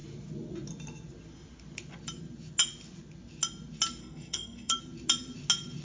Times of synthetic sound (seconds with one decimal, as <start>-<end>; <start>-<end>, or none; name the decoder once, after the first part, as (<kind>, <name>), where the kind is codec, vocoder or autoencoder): 4.0-4.8 (codec, SNAC)